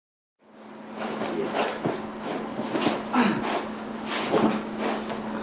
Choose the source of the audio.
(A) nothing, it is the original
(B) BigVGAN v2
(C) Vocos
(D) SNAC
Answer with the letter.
A